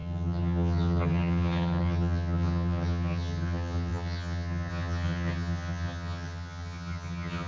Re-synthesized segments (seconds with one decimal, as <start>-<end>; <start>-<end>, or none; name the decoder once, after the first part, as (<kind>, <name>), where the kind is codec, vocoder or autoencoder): 0.0-7.5 (vocoder, HiFi-GAN)